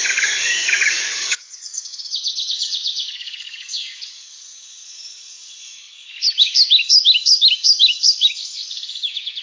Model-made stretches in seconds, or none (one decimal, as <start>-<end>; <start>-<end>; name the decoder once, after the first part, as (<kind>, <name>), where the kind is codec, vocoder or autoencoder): 0.0-9.4 (codec, DAC)

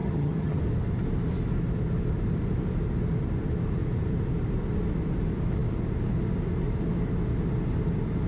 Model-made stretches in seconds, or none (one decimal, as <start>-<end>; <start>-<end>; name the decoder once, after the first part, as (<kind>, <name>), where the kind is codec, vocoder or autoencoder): 0.0-0.6 (vocoder, HiFi-GAN)